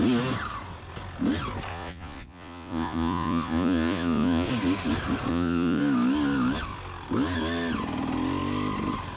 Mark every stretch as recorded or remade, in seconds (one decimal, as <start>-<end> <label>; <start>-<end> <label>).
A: 0.0-1.7 recorded; 1.7-4.5 remade; 4.5-5.3 recorded; 5.3-5.8 remade; 5.8-9.2 recorded